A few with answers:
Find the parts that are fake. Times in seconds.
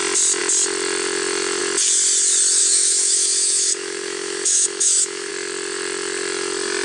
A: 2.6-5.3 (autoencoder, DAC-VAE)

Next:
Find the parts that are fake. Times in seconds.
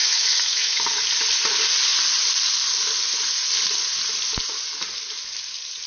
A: 0.0-0.8 (autoencoder, DAC-VAE)